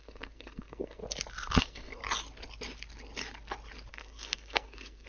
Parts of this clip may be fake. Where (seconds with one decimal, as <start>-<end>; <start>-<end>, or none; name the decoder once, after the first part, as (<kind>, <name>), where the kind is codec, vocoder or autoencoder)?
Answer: 0.0-1.0 (codec, SNAC); 1.6-2.0; 3.9-5.1